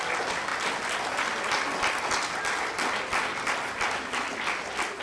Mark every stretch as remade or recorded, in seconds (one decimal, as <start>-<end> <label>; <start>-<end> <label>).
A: 0.0-5.0 recorded